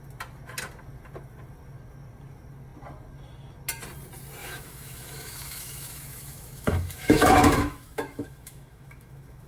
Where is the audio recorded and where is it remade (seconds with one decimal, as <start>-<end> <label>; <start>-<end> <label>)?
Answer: 0.0-4.4 recorded; 4.4-9.5 remade